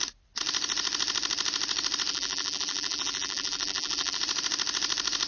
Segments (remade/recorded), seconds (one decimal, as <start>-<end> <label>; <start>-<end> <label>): 0.0-2.1 recorded; 2.1-4.2 remade; 4.2-5.3 recorded